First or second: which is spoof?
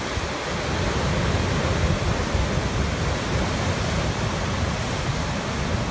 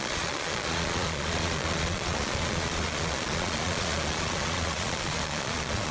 second